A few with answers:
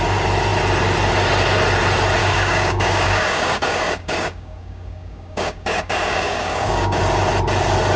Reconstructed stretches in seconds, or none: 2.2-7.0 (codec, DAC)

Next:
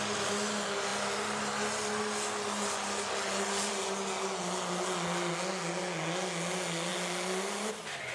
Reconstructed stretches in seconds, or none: none

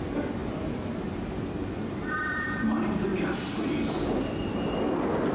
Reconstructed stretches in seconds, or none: 0.0-3.1 (vocoder, BigVGAN v2)

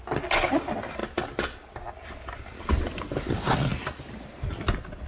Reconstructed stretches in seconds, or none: none

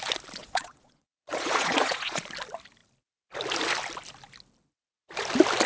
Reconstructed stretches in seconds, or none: 0.4-2.2 (vocoder, Vocos)

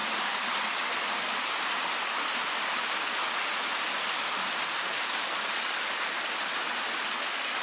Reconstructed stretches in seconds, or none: none